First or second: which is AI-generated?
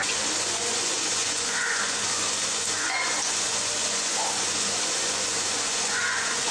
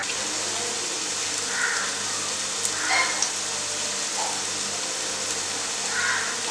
first